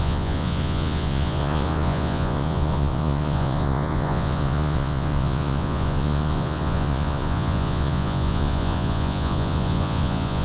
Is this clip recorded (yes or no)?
no